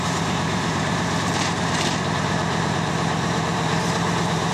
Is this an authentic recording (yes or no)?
no